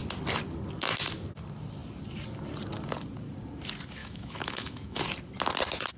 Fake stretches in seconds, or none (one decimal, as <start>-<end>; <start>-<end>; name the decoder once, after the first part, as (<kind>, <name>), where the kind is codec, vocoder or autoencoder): 4.0-5.0 (autoencoder, DAC-VAE)